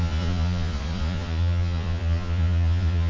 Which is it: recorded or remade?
remade